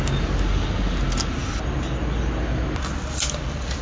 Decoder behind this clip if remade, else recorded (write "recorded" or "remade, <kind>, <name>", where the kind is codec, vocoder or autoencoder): recorded